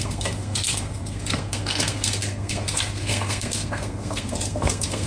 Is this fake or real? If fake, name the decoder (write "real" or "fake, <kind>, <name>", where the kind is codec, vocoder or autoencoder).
fake, codec, SNAC